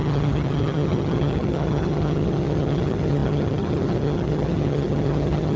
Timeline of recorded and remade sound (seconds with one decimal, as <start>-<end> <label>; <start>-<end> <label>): 0.0-5.6 remade